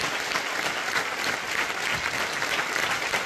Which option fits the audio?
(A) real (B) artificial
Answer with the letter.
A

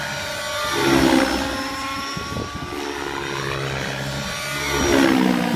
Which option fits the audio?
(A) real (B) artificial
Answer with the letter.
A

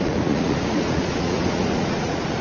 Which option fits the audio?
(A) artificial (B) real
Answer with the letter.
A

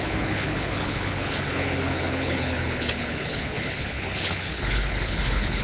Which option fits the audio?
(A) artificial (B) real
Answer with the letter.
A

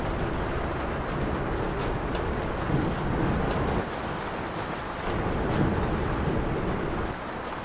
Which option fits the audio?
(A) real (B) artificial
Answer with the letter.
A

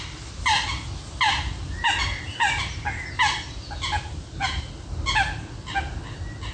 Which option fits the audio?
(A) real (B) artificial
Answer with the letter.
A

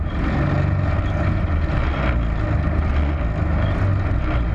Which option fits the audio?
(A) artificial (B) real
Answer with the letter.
B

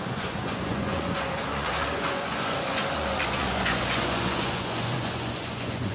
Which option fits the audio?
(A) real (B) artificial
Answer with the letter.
B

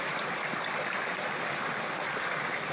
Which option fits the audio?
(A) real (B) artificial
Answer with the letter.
A